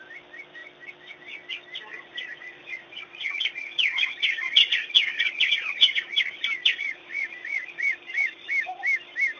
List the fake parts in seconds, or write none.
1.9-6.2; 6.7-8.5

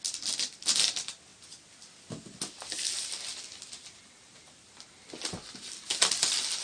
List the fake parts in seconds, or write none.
none

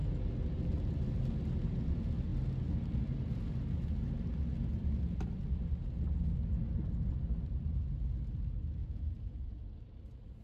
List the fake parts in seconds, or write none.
8.8-9.6

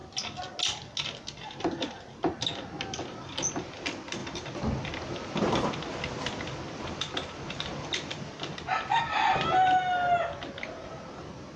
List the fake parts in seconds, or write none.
none

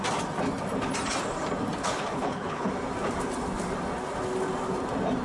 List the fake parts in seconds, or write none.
1.8-2.7

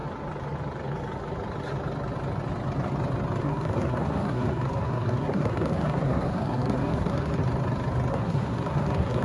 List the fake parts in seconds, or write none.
3.4-7.4; 8.1-9.2

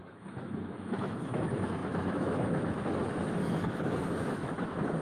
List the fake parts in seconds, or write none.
0.0-5.0